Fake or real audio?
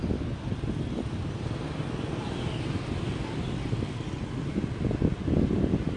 real